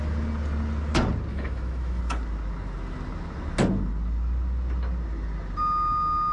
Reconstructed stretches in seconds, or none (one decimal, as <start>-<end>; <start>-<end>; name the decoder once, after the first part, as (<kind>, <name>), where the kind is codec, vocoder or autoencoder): 1.3-2.0 (autoencoder, DAC-VAE)